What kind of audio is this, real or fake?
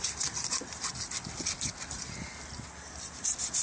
real